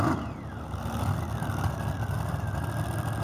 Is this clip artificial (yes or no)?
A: no